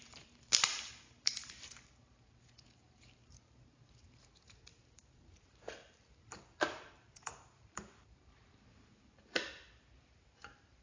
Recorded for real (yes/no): no